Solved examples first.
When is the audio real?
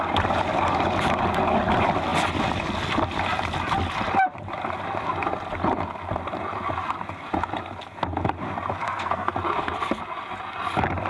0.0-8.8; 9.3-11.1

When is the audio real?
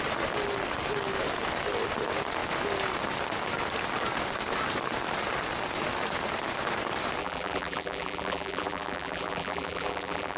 0.0-7.2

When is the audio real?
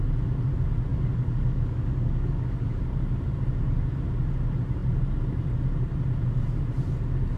0.0-0.9; 2.8-7.4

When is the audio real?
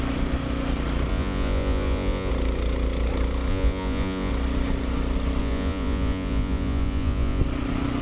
0.0-1.1; 2.3-3.5; 4.3-5.4; 7.4-8.0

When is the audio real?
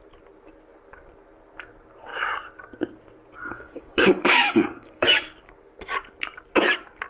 0.0-3.4; 5.5-7.1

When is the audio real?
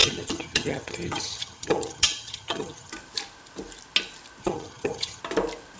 2.9-4.4; 5.2-5.8